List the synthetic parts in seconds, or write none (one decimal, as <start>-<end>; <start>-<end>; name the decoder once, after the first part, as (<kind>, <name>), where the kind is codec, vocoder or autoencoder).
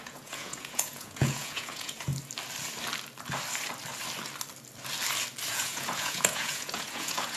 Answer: 0.0-2.1 (vocoder, Vocos); 5.5-7.4